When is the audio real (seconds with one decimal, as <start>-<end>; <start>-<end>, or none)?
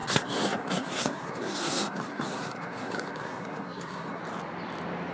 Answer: 4.2-5.1